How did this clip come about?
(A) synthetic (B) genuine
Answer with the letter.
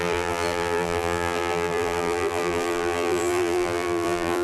A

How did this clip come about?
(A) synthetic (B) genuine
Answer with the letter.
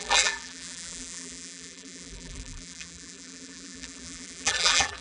A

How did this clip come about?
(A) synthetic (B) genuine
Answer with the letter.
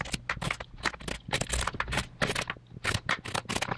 B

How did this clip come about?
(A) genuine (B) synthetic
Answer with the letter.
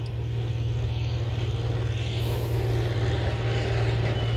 A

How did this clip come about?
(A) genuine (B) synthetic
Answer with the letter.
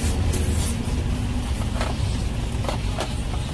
A